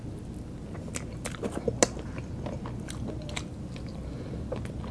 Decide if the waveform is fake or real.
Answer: real